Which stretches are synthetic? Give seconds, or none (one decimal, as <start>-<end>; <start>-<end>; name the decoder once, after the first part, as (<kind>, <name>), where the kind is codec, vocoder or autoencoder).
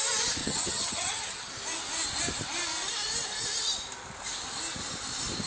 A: 0.4-1.5 (vocoder, HiFi-GAN)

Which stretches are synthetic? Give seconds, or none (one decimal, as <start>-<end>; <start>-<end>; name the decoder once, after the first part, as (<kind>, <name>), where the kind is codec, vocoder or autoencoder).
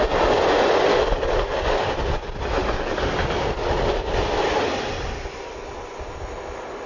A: 0.9-1.9 (codec, DAC); 2.6-3.1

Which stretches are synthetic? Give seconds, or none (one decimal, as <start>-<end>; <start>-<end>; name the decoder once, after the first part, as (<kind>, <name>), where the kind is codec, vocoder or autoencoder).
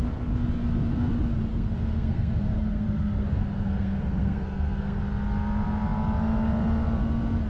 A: 1.5-5.0 (codec, SNAC)